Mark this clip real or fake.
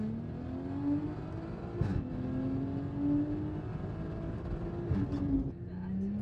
real